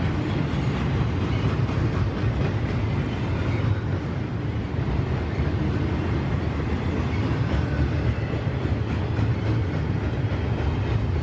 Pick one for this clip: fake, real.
real